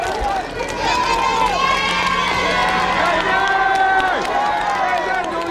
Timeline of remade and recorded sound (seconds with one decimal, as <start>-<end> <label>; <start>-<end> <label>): 0.0-5.5 recorded